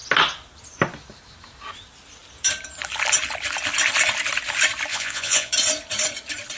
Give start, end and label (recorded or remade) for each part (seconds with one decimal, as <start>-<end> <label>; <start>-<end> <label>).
0.0-4.9 recorded; 4.9-5.5 remade; 5.5-6.6 recorded